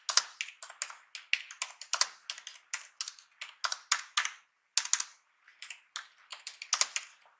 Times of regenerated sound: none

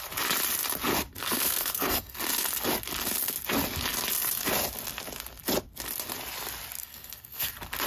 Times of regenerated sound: 1.2-2.2 (codec, SNAC); 6.8-7.5

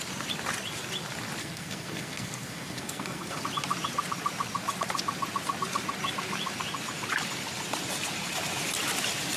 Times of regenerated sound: 1.4-3.4 (codec, SNAC)

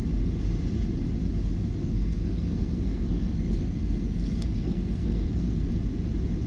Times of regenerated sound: 1.8-5.7 (codec, SNAC)

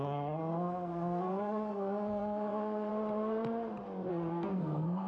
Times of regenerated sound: 0.0-2.9 (codec, SNAC); 4.1-5.1

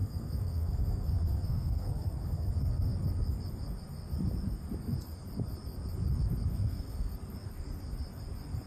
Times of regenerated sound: 0.0-2.5 (codec, SNAC); 6.5-7.1

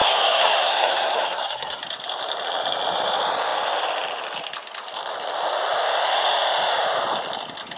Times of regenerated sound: 0.0-1.8 (codec, SNAC)